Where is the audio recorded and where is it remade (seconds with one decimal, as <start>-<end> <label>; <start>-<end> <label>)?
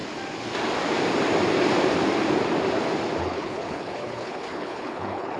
0.0-3.2 recorded; 3.2-5.4 remade